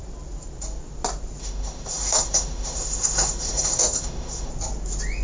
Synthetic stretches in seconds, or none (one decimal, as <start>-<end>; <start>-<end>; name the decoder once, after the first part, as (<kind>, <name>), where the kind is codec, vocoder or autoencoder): 1.4-4.5 (autoencoder, DAC-VAE)